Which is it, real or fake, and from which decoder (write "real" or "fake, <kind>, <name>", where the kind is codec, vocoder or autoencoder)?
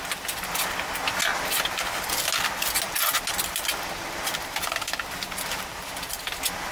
real